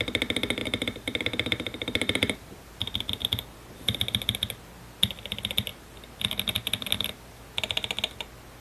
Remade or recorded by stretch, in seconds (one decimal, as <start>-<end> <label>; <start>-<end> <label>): 0.0-0.6 recorded; 0.6-2.7 remade; 2.7-8.6 recorded